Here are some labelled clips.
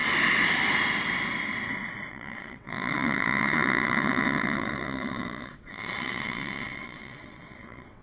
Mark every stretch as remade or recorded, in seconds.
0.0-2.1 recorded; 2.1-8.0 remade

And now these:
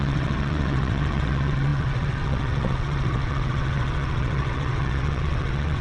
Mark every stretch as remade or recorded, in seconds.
0.0-5.8 remade

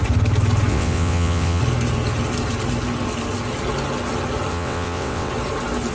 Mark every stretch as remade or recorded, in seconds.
0.0-0.7 recorded; 0.7-1.6 remade; 1.6-4.5 recorded; 4.5-5.3 remade; 5.3-5.9 recorded

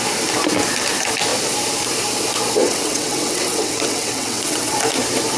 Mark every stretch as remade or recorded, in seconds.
0.0-2.6 recorded; 2.6-4.7 remade; 4.7-5.4 recorded

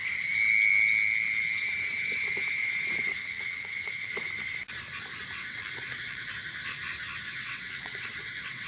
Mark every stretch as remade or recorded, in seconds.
0.0-3.2 recorded; 3.2-4.1 remade; 4.1-5.4 recorded; 5.4-6.3 remade; 6.3-7.3 recorded; 7.3-8.7 remade